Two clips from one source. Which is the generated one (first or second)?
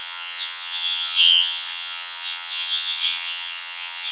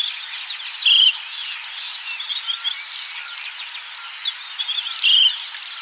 first